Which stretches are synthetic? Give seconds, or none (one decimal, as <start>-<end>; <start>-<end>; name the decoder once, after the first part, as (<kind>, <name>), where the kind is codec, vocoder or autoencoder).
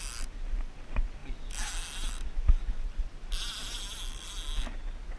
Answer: none